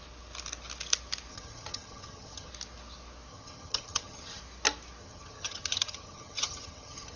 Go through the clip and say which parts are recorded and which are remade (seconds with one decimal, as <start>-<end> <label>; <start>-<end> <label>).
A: 0.0-1.3 recorded; 1.3-2.5 remade; 2.5-3.3 recorded; 3.3-4.4 remade; 4.4-5.0 recorded; 5.0-7.2 remade